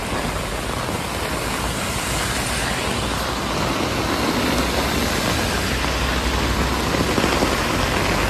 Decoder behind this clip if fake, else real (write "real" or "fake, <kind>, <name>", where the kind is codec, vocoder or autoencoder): real